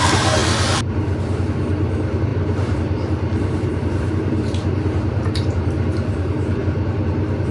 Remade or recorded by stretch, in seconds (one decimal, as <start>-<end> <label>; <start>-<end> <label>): 0.0-0.4 remade; 0.4-1.5 recorded; 1.5-7.5 remade